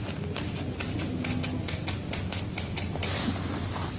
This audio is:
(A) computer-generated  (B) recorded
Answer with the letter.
B